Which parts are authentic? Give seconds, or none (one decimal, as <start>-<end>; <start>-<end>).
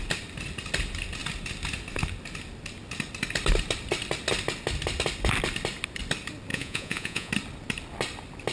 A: 0.0-6.5; 7.3-8.5